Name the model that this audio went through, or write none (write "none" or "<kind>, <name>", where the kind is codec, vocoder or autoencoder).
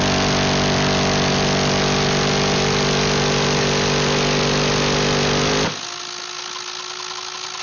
none